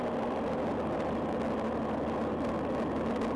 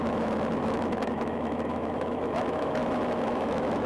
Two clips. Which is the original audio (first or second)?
first